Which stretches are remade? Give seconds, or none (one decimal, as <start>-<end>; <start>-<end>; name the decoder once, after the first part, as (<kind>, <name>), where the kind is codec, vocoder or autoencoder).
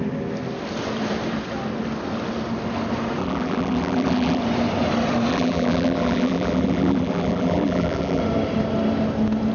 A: 3.2-4.4 (vocoder, BigVGAN v2); 5.3-8.2